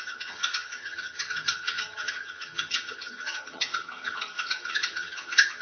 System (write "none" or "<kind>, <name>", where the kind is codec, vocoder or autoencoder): vocoder, HiFi-GAN